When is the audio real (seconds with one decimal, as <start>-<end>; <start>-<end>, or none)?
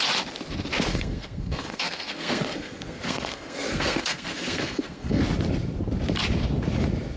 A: 0.0-0.9; 5.2-7.2